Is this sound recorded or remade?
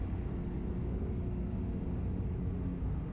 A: recorded